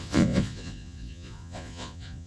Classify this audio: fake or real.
fake